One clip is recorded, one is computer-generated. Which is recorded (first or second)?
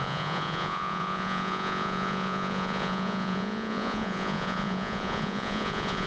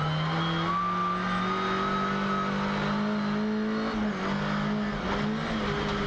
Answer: second